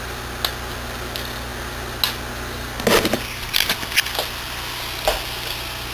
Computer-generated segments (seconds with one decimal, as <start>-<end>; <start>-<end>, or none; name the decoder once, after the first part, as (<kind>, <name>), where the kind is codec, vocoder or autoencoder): none